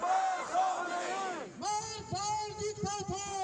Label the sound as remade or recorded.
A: recorded